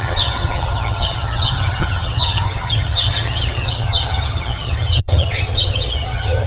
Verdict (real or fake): fake